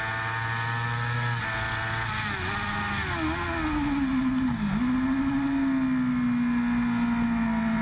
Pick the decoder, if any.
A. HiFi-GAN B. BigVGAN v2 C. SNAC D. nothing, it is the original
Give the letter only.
D